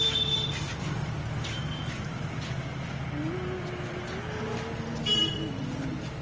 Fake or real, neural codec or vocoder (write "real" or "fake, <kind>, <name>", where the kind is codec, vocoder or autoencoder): real